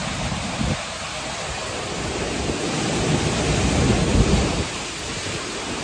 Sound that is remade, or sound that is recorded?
recorded